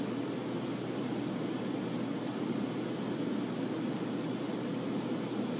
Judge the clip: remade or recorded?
recorded